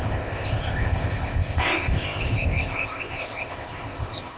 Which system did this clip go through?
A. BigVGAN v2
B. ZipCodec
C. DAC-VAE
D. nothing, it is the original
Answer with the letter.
B